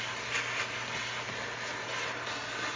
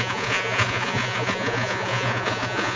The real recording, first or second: first